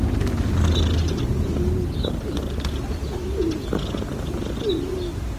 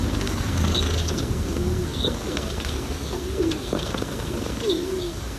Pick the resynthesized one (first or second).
second